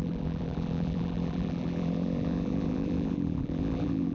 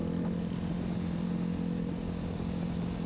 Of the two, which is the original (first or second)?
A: second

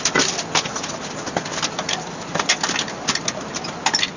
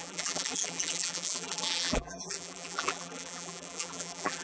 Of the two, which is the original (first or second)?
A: first